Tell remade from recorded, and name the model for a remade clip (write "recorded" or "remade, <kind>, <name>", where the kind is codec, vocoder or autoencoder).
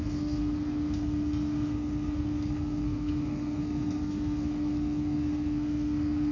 remade, codec, SNAC